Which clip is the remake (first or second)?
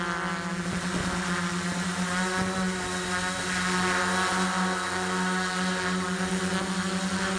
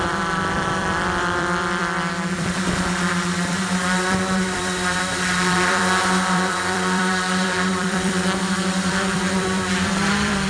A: second